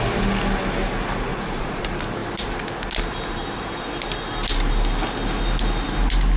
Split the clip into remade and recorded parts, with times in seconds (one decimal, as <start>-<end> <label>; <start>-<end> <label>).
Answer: 0.0-1.3 recorded; 1.3-1.8 remade; 1.8-6.4 recorded